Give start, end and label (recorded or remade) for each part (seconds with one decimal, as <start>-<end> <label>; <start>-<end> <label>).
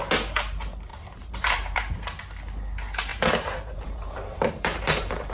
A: 0.0-0.9 recorded; 0.9-2.2 remade; 2.2-3.1 recorded; 3.1-5.3 remade